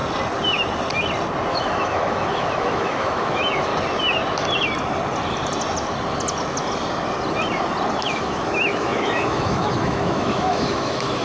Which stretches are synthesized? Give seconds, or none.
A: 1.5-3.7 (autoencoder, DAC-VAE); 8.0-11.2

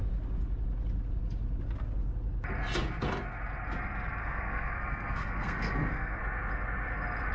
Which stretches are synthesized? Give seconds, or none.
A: 4.2-6.2 (codec, SNAC)

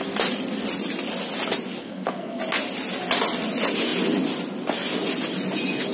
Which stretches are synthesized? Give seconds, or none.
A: 1.8-2.4 (codec, SNAC)

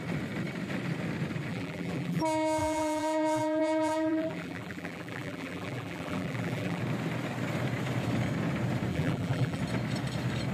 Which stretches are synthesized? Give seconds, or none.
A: 1.5-2.2 (vocoder, BigVGAN v2); 2.6-6.8; 8.9-9.6

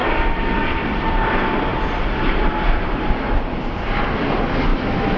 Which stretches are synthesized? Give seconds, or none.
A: 4.7-5.2 (autoencoder, DAC-VAE)

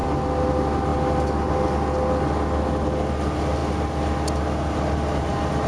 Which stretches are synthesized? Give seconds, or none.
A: none

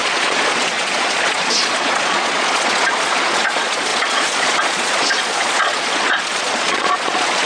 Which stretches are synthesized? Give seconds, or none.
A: 0.0-7.5 (vocoder, Vocos)

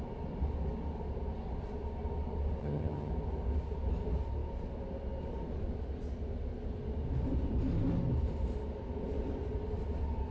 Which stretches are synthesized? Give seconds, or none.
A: 2.6-3.1 (vocoder, HiFi-GAN)